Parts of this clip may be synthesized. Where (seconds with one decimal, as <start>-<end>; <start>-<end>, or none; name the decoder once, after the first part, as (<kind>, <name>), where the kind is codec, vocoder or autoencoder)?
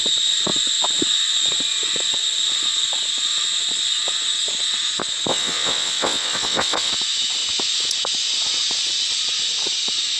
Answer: 5.3-6.9 (vocoder, WaveNeXt)